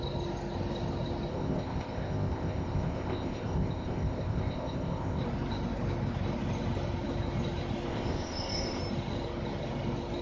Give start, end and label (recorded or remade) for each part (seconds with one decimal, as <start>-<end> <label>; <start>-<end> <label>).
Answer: 0.0-1.3 recorded; 1.3-5.2 remade; 5.2-7.9 recorded; 7.9-8.8 remade; 8.8-10.2 recorded